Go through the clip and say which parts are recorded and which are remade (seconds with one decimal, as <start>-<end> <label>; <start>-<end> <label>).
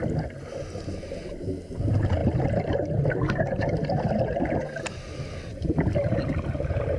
0.0-7.0 recorded